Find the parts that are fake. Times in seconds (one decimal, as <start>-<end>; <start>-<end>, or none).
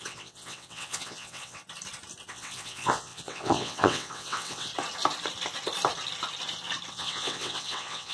0.0-1.6; 2.3-4.7; 6.9-8.1